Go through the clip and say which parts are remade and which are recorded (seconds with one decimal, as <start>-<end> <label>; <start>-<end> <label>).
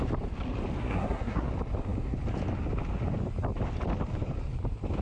0.0-0.8 recorded; 0.8-1.5 remade; 1.5-5.0 recorded